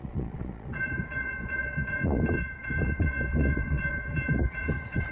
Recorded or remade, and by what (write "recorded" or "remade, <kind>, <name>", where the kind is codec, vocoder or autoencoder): remade, vocoder, Vocos